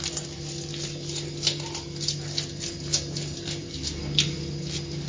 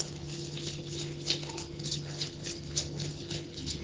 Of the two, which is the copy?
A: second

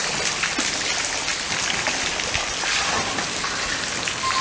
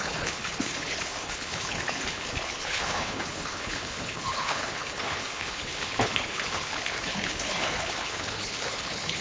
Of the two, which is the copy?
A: second